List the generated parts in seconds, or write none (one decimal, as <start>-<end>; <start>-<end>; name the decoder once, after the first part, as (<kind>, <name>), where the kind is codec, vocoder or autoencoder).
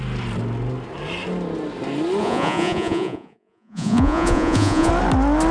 2.2-4.9 (vocoder, Vocos)